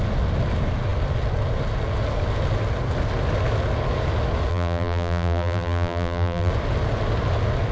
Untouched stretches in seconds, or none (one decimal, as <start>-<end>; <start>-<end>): 0.0-4.5; 6.5-7.7